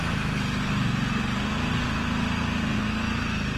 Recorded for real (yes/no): yes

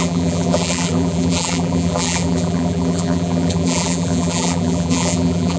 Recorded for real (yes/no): no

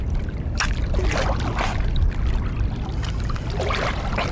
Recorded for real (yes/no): yes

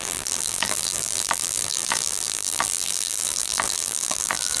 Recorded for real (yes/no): no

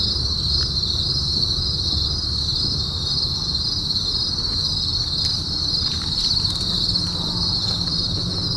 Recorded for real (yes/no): yes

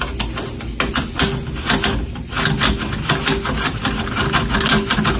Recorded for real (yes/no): yes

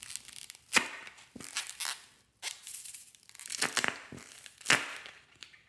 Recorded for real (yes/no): yes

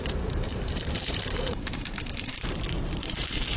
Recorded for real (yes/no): no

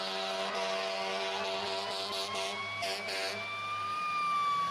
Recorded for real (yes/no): yes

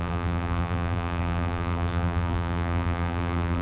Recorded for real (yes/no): no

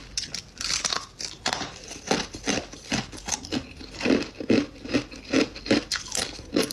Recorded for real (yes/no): yes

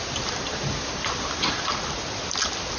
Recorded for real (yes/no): yes